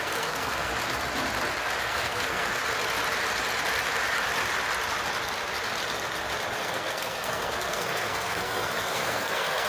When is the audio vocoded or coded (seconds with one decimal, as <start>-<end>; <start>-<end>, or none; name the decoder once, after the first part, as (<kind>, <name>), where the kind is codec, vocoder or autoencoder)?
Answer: 0.0-0.7 (codec, SNAC); 1.8-2.6; 6.6-9.7